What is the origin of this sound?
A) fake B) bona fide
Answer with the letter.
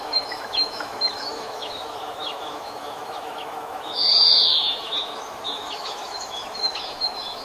A